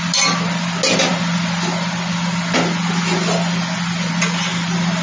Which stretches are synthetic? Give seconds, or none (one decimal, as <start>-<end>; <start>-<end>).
none